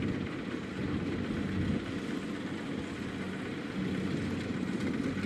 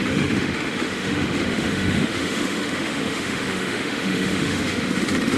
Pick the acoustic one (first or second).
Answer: first